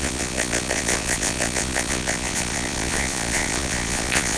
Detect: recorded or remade remade